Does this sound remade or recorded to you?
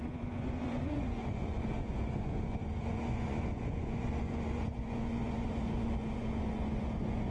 remade